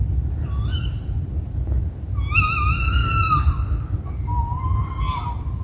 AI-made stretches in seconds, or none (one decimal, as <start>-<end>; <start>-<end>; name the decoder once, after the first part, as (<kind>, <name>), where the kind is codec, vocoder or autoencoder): none